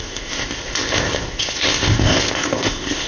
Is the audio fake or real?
fake